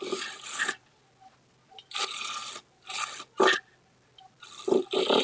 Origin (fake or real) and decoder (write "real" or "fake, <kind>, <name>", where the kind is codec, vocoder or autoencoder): real